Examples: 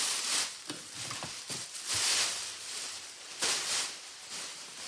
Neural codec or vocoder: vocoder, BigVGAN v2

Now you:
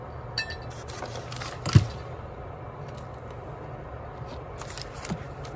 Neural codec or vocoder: none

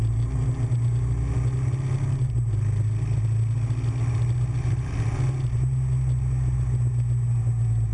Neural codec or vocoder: none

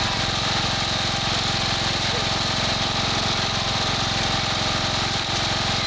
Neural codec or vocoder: none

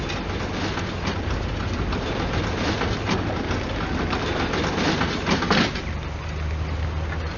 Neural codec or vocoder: none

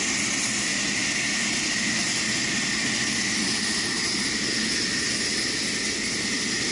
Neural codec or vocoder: none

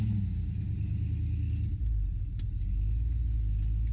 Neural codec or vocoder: none